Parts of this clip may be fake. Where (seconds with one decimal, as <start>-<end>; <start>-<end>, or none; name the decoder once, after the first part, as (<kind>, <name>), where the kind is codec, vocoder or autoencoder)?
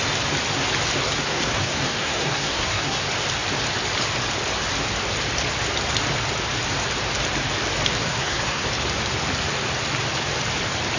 1.2-3.0 (codec, SNAC); 8.0-8.7